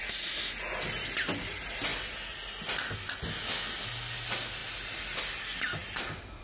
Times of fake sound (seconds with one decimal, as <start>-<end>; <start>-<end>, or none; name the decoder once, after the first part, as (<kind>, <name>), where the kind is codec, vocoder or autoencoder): none